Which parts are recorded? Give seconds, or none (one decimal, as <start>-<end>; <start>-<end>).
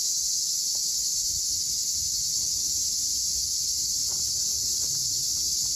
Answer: 0.0-5.8